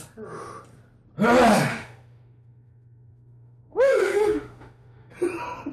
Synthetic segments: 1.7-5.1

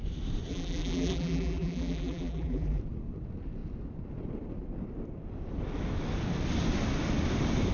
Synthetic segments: 0.5-2.8